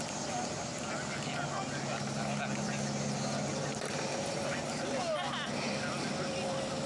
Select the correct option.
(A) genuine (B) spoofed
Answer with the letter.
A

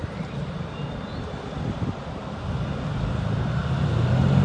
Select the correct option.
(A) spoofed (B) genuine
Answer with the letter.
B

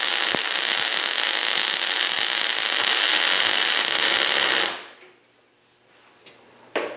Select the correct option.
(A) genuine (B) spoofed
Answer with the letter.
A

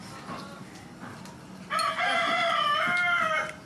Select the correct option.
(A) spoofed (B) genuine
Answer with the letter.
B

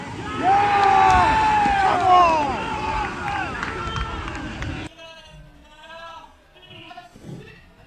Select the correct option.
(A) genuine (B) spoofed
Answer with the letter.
A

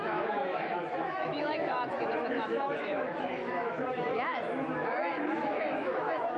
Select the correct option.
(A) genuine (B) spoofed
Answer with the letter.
B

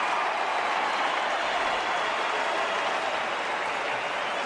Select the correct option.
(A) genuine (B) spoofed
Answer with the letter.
A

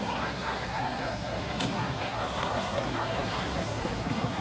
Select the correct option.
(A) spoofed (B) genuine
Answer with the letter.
A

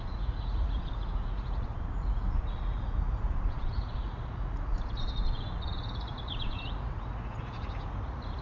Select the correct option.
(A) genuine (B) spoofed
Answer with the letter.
B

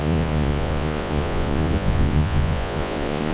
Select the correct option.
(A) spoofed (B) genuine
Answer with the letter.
A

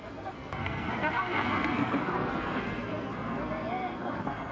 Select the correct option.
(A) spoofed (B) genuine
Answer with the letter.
A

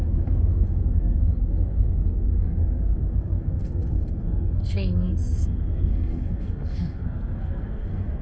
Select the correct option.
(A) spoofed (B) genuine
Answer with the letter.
A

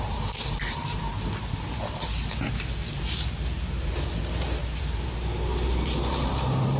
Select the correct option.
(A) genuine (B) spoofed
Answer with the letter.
B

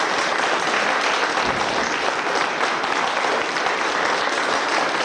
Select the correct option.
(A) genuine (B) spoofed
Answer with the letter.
A